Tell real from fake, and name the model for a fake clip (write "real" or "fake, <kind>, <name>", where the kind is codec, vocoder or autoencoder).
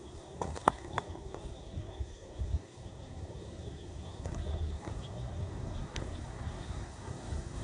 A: fake, codec, SNAC